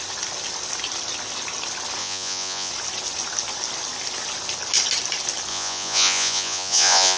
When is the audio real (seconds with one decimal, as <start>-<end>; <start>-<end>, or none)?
0.0-2.0; 2.7-5.5